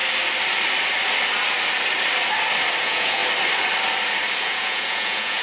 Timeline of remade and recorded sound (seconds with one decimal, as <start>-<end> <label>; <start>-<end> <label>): 0.0-2.8 recorded; 2.8-3.2 remade; 3.2-4.4 recorded; 4.4-5.4 remade